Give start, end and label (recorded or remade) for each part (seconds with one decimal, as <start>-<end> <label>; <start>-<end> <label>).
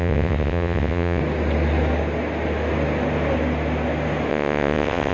0.0-1.2 remade; 1.2-4.3 recorded; 4.3-5.1 remade